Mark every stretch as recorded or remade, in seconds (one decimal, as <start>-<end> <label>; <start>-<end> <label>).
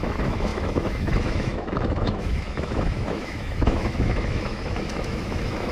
0.0-5.7 remade